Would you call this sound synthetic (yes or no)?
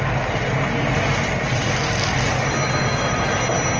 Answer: no